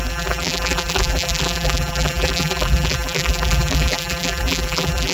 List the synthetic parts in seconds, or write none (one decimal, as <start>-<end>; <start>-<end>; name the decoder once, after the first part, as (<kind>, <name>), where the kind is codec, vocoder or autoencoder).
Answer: 0.0-5.1 (vocoder, BigVGAN v2)